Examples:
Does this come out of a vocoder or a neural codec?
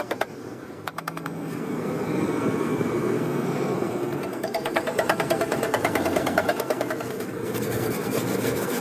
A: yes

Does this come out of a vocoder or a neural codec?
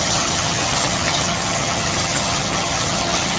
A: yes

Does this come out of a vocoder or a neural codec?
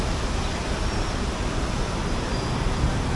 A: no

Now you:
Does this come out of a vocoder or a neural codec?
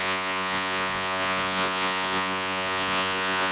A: yes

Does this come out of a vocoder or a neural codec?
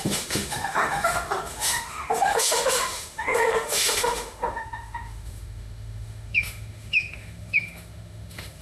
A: yes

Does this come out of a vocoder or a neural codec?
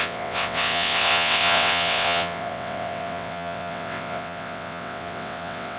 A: yes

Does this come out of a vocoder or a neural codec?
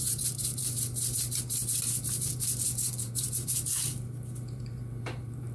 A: yes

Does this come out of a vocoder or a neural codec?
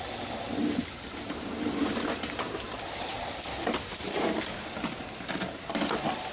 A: no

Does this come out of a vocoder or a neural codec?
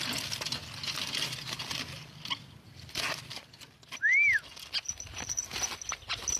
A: no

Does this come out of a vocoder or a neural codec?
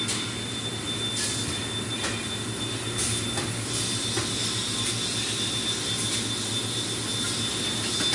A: no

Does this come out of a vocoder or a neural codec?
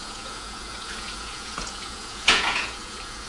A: yes